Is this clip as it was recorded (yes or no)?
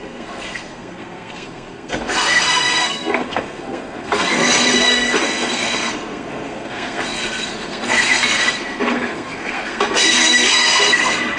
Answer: no